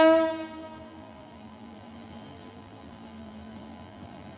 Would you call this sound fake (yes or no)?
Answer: yes